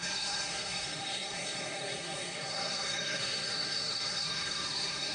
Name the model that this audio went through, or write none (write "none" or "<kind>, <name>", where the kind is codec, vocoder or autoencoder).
codec, SNAC